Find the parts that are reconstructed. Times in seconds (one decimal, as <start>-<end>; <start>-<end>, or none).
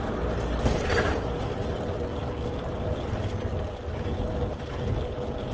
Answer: none